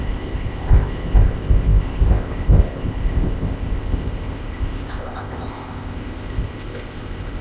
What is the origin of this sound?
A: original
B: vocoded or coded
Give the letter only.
B